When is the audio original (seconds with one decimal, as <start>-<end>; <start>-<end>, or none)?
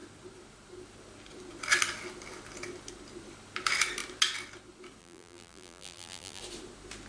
0.0-5.0; 6.4-7.1